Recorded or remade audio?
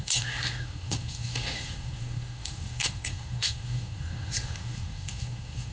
remade